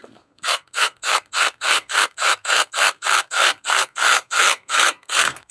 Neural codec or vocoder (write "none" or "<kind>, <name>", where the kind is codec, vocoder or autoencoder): codec, SNAC